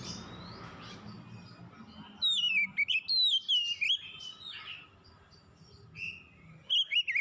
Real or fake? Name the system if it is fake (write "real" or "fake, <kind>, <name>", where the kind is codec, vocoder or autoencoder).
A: real